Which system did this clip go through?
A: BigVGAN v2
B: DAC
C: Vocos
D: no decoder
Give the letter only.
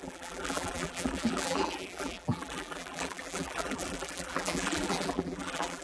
A